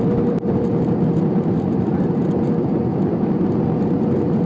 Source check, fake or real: fake